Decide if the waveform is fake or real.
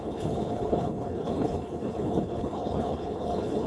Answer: fake